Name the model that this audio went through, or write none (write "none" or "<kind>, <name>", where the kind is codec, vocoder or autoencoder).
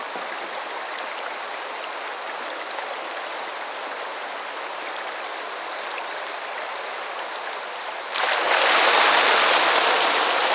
none